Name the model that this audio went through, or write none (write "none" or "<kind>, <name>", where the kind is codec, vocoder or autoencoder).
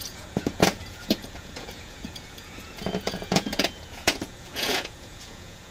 vocoder, Vocos